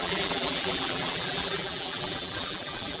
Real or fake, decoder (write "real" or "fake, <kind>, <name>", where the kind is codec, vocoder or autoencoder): fake, vocoder, BigVGAN v2